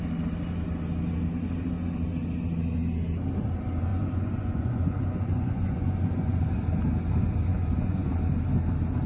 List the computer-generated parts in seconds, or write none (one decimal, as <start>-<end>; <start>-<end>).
3.9-6.4; 7.5-8.1